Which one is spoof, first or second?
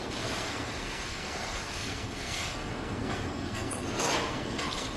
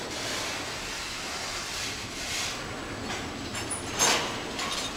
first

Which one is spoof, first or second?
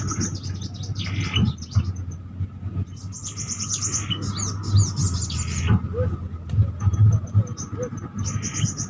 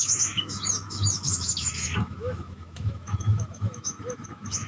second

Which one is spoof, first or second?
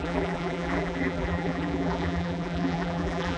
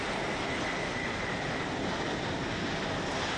first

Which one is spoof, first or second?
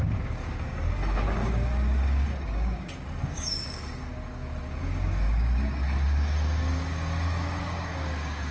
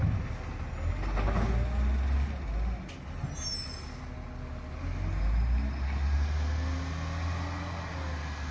first